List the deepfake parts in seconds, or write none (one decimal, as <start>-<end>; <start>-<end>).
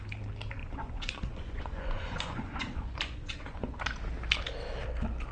0.6-3.8